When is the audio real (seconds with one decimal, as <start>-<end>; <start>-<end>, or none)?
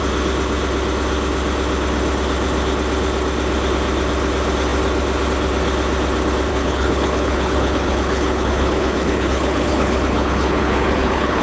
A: 0.0-6.5